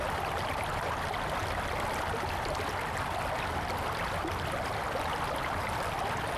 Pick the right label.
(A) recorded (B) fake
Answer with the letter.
A